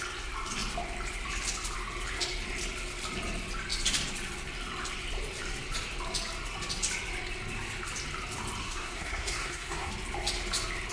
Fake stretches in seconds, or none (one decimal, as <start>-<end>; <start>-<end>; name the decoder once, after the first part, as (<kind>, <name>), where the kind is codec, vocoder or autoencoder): 8.6-9.9 (codec, SNAC)